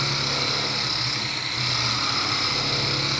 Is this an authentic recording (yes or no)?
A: yes